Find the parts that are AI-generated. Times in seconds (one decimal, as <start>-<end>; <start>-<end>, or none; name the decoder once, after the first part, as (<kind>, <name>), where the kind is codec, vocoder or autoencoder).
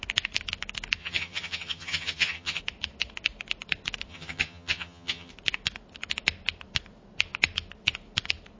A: 1.0-2.6 (vocoder, HiFi-GAN); 4.1-5.3